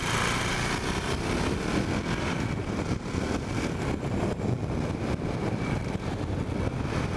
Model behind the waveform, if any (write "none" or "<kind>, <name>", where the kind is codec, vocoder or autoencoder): none